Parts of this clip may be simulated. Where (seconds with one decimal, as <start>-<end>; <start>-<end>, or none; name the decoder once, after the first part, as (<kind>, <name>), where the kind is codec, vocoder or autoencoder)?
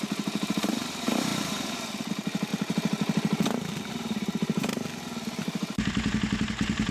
0.0-1.3 (vocoder, BigVGAN v2); 2.1-2.5; 3.9-4.7; 5.4-6.9